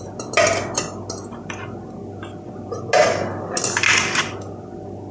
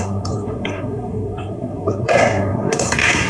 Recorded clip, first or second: first